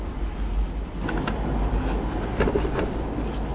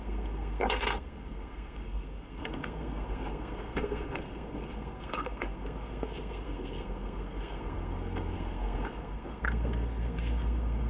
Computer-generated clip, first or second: second